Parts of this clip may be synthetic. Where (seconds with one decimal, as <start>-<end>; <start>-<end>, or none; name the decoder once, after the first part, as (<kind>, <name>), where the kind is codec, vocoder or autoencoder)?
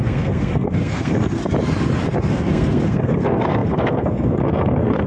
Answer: 0.0-1.4 (codec, SNAC); 2.3-5.1